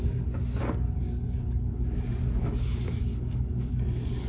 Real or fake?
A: fake